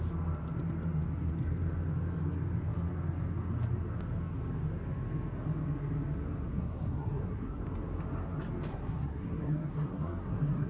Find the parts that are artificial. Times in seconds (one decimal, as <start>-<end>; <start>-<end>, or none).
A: 6.5-7.6; 8.7-10.7